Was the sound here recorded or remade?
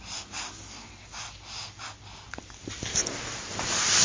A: recorded